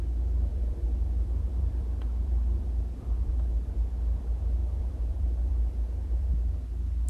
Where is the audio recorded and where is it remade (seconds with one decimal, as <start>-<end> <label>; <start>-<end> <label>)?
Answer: 0.0-0.5 recorded; 0.5-3.5 remade; 3.5-4.6 recorded; 4.6-6.3 remade; 6.3-7.1 recorded